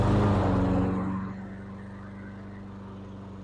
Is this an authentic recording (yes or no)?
yes